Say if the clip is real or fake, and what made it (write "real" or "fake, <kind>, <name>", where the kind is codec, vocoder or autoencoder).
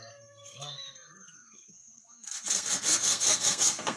fake, codec, SNAC